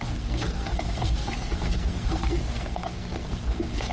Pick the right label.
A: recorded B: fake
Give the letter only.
B